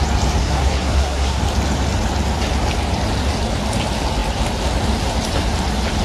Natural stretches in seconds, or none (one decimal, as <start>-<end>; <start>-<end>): 0.0-0.4; 1.4-6.0